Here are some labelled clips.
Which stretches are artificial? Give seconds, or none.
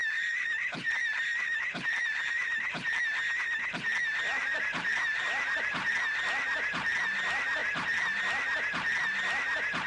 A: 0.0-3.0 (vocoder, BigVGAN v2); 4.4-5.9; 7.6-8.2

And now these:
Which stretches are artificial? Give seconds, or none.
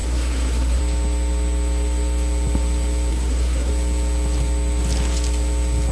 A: 0.0-0.8 (codec, SNAC); 3.1-3.7